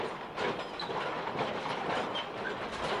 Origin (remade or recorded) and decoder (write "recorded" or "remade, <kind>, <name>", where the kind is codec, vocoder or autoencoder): recorded